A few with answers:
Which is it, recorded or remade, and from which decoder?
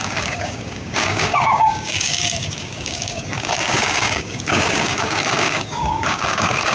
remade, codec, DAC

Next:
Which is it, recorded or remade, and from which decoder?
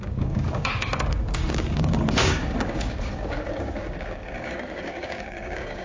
remade, codec, DAC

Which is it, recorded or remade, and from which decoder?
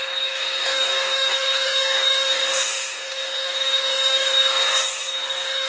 remade, codec, DAC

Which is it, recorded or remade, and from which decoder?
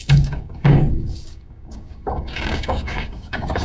remade, codec, DAC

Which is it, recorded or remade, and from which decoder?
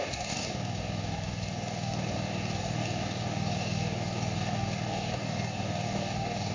remade, codec, DAC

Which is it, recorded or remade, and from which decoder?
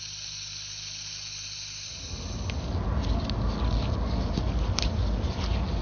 recorded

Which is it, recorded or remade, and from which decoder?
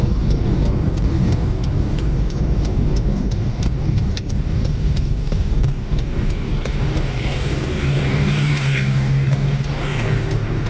remade, codec, DAC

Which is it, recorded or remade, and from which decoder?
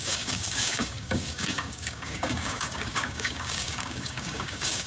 remade, codec, DAC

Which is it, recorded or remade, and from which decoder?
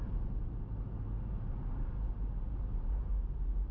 recorded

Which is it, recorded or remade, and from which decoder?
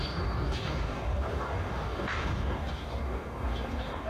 remade, codec, DAC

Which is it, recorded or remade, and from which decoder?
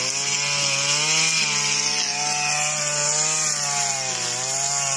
recorded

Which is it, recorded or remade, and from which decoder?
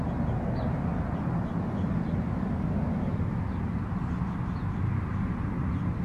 recorded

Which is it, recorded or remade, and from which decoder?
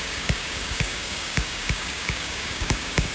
remade, codec, DAC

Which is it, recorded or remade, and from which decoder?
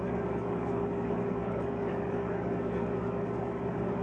remade, codec, DAC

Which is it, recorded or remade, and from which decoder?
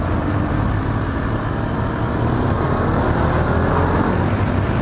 recorded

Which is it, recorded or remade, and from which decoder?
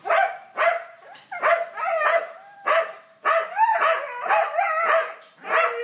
recorded